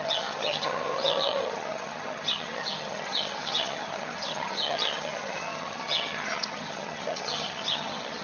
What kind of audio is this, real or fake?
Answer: fake